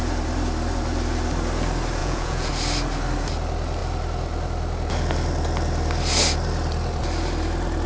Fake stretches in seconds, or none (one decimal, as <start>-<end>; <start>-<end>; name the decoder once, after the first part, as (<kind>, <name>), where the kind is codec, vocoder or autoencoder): 2.0-2.5 (vocoder, Vocos)